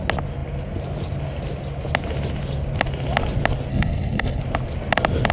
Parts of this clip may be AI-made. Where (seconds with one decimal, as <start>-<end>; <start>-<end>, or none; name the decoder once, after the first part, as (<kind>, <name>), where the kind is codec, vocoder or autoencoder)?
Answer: 3.7-4.4 (codec, SNAC)